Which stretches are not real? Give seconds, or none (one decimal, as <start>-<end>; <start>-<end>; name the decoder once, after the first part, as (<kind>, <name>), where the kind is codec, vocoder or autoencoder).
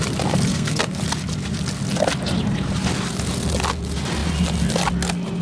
0.5-1.0 (codec, SNAC)